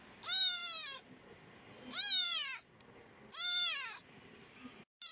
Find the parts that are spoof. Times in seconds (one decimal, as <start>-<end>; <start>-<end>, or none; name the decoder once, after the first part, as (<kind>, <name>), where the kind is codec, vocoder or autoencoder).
none